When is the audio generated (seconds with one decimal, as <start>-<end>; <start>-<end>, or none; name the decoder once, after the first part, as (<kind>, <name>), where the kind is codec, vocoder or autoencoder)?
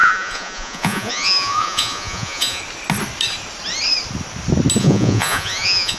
0.0-2.6 (vocoder, Vocos); 4.8-6.0